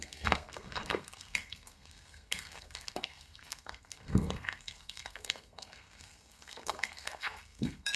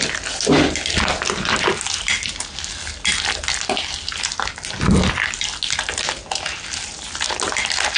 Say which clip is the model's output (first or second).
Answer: first